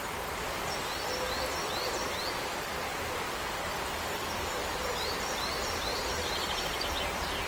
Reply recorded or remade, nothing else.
remade